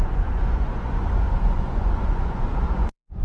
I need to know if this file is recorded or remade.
remade